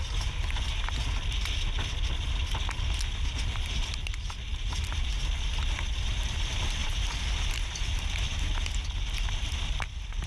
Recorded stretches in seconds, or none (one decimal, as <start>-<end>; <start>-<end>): 0.0-4.9; 5.5-6.8; 7.5-10.3